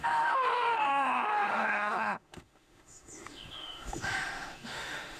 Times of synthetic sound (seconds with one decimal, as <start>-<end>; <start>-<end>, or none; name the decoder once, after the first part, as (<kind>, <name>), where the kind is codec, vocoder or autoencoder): 0.0-5.2 (autoencoder, DAC-VAE)